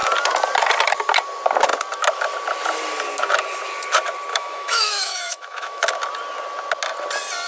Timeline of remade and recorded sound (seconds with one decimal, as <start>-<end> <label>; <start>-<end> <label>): 0.0-4.3 recorded; 4.3-5.9 remade; 5.9-7.5 recorded